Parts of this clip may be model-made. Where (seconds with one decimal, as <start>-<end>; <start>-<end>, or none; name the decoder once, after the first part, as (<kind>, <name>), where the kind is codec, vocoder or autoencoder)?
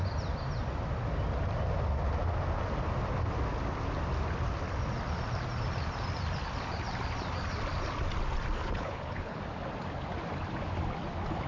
8.6-9.4 (codec, HILCodec)